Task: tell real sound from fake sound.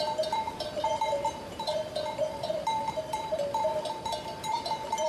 fake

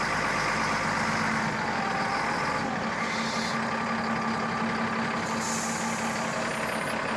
real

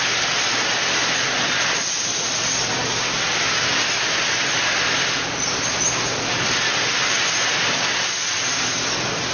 fake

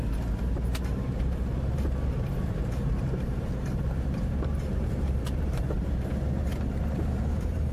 fake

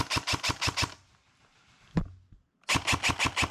real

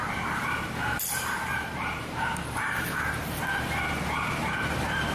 fake